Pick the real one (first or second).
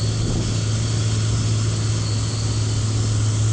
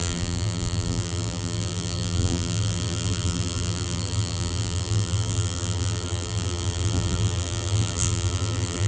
first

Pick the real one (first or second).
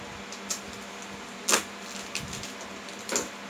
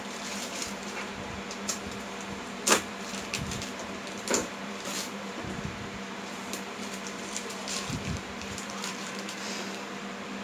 first